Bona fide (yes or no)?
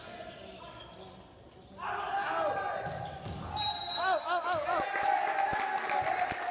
yes